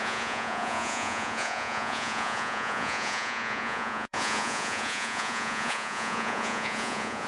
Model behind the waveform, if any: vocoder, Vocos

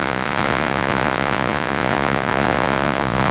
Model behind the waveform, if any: vocoder, Vocos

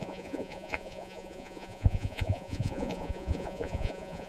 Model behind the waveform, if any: vocoder, Vocos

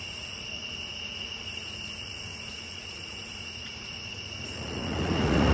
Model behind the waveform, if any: vocoder, Vocos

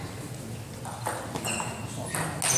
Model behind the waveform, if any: none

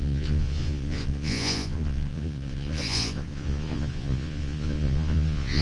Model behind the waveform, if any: vocoder, Vocos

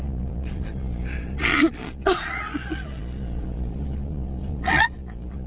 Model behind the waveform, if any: vocoder, Vocos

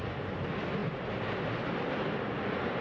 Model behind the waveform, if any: none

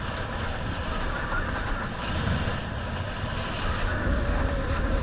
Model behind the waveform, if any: none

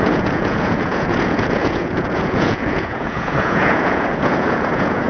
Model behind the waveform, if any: vocoder, Vocos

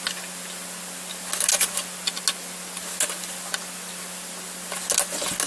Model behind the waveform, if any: none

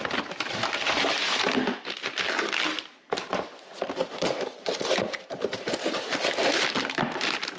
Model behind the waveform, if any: none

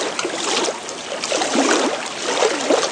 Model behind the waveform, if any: none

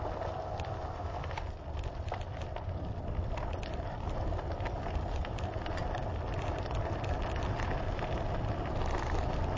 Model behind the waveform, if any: none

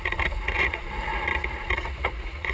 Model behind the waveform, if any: vocoder, Vocos